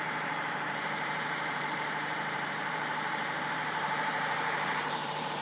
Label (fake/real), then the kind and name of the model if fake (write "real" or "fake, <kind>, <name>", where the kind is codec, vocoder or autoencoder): fake, vocoder, BigVGAN v2